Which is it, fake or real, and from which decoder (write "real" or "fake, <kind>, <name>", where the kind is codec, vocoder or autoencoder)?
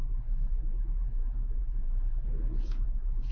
fake, vocoder, Vocos